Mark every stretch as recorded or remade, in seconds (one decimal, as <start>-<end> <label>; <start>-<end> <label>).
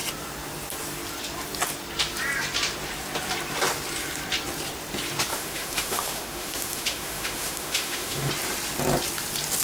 0.0-5.3 recorded; 5.3-8.3 remade; 8.3-9.6 recorded